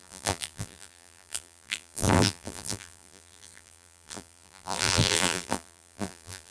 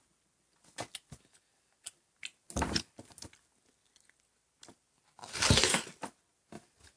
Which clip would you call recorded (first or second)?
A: second